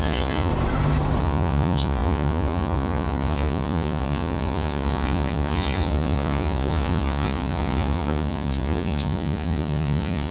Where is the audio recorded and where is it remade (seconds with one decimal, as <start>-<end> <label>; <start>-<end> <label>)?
0.0-0.5 remade; 0.5-1.2 recorded; 1.2-10.3 remade